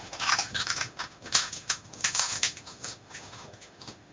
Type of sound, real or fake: fake